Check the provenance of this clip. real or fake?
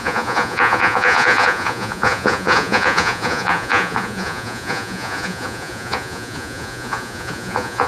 fake